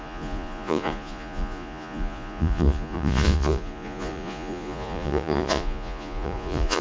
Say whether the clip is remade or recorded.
remade